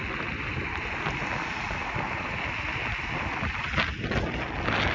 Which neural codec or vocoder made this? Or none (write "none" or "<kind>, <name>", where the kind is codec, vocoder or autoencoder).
none